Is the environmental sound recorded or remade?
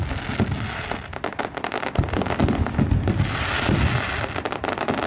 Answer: recorded